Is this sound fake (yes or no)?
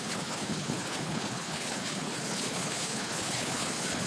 yes